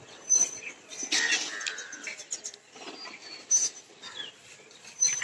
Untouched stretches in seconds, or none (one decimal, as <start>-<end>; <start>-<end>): 1.0-4.1